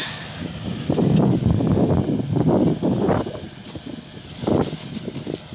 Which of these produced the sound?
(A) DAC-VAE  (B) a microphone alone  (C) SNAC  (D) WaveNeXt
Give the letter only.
B